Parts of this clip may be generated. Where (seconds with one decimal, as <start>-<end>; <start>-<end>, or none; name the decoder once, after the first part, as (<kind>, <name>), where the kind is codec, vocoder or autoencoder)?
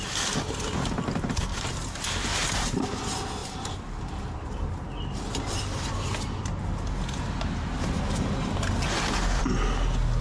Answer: 2.4-3.0 (vocoder, BigVGAN v2); 3.4-4.7